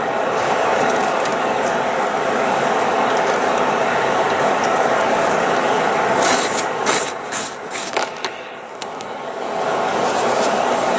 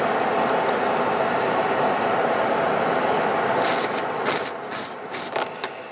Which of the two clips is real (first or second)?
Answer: second